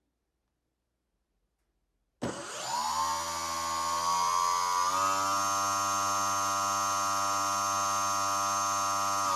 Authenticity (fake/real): real